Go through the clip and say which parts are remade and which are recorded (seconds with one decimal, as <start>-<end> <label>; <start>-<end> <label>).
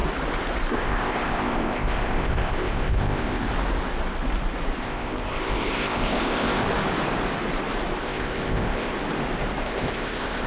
0.0-0.7 recorded; 0.7-3.5 remade; 3.5-4.8 recorded; 4.8-6.6 remade; 6.6-8.0 recorded; 8.0-8.9 remade; 8.9-9.6 recorded; 9.6-10.5 remade